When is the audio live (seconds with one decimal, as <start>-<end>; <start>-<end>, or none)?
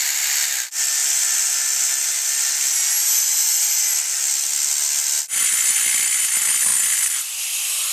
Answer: 0.0-7.9